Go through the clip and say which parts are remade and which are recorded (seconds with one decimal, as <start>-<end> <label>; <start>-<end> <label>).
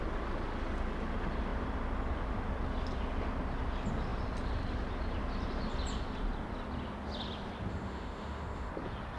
0.0-7.7 recorded; 7.7-8.7 remade; 8.7-9.2 recorded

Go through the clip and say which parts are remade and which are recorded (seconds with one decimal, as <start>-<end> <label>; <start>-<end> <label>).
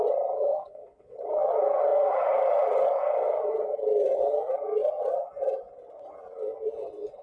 0.0-0.5 recorded; 0.5-1.5 remade; 1.5-7.2 recorded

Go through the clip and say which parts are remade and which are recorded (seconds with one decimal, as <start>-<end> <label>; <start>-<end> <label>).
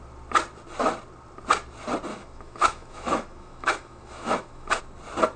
0.0-2.1 recorded; 2.1-4.8 remade; 4.8-5.4 recorded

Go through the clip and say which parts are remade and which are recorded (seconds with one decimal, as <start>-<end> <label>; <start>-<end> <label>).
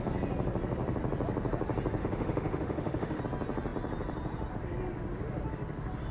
0.0-2.0 recorded; 2.0-3.2 remade; 3.2-6.1 recorded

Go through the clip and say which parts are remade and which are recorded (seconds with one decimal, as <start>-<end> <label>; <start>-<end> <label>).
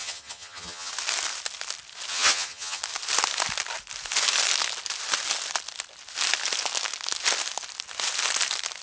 0.0-0.9 remade; 0.9-2.1 recorded; 2.1-2.8 remade; 2.8-8.8 recorded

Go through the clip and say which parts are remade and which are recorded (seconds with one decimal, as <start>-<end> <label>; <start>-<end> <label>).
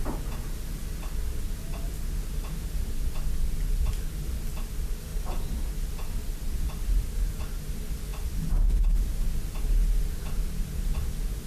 0.0-11.5 recorded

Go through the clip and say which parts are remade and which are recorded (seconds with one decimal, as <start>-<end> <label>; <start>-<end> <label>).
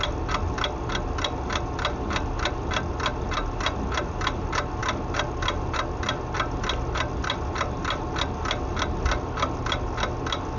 0.0-10.6 recorded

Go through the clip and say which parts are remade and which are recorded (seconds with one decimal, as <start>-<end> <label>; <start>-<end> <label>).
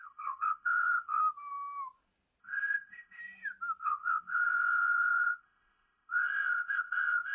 0.0-1.2 remade; 1.2-2.4 recorded; 2.4-3.2 remade; 3.2-3.8 recorded; 3.8-7.3 remade